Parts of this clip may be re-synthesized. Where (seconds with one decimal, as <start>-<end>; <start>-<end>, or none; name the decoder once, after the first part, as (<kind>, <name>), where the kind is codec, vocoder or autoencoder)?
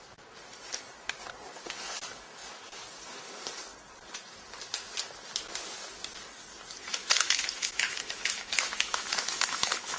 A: 7.0-10.0 (autoencoder, DAC-VAE)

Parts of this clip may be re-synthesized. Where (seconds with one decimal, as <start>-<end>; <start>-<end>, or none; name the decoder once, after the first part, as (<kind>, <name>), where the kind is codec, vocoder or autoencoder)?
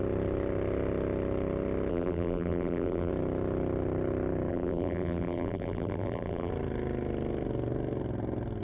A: 1.9-3.1 (vocoder, BigVGAN v2); 4.5-6.5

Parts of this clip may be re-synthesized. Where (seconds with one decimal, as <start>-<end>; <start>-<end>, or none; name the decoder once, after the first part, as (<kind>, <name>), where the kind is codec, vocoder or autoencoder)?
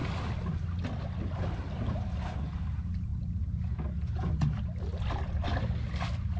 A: none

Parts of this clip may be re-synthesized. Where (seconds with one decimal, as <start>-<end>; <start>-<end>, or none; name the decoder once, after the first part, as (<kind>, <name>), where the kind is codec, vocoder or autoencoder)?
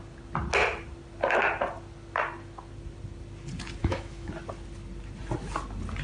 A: 3.8-4.3 (autoencoder, DAC-VAE)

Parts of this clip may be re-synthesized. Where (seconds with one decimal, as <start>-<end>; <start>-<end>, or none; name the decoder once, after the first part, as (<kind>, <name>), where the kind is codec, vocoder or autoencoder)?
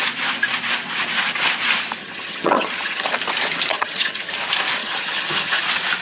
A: 2.0-3.1 (vocoder, HiFi-GAN); 3.7-4.3; 4.8-5.6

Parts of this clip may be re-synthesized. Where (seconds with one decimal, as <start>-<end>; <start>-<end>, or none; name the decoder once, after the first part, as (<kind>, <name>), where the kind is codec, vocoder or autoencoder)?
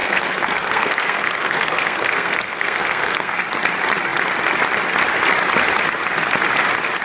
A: 0.0-3.4 (codec, SNAC)